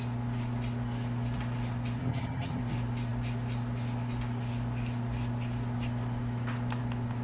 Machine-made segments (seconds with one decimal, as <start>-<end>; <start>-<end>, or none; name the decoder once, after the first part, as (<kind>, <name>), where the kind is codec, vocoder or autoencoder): 2.0-2.6 (vocoder, HiFi-GAN)